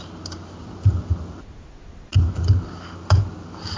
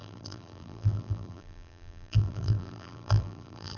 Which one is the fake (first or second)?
second